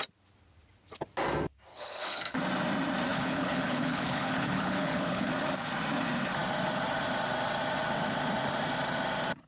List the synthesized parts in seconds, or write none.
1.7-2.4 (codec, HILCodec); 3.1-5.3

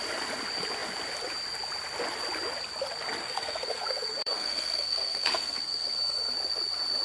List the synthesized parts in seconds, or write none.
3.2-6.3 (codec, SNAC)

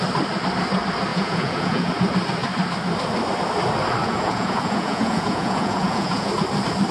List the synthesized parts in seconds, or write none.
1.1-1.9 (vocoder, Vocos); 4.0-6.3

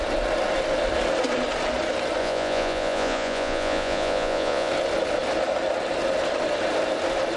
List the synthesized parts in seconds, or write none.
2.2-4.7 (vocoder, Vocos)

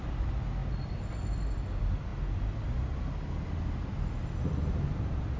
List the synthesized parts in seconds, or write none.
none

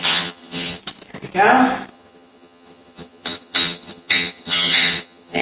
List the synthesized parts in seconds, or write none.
0.0-0.8 (vocoder, HiFi-GAN); 1.9-5.4